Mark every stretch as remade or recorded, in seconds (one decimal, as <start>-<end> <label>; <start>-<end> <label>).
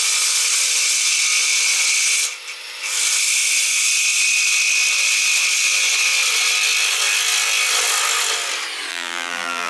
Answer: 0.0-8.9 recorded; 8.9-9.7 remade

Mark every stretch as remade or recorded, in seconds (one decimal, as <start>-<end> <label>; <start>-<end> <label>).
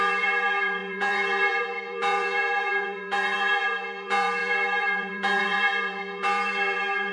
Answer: 0.0-7.1 remade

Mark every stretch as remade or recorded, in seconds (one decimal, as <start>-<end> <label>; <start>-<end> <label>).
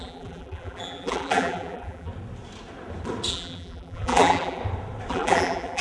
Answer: 0.0-2.1 remade; 2.1-3.3 recorded; 3.3-4.6 remade; 4.6-5.1 recorded; 5.1-5.8 remade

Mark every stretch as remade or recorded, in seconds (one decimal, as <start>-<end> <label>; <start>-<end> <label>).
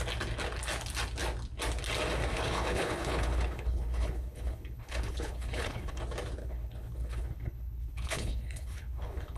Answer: 0.0-2.3 recorded; 2.3-6.0 remade; 6.0-6.4 recorded; 6.4-9.4 remade